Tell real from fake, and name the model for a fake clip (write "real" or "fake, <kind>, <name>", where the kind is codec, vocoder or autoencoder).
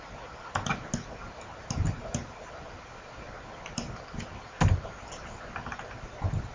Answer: real